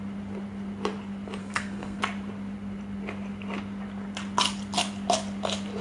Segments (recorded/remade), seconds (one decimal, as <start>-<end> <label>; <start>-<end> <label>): 0.0-1.4 recorded; 1.4-2.0 remade; 2.0-5.8 recorded